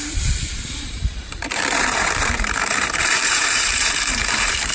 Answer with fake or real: fake